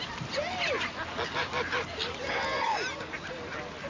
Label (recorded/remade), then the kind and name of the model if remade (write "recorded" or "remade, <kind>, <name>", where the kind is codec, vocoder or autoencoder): recorded